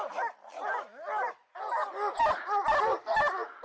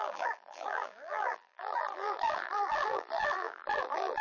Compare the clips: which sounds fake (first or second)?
second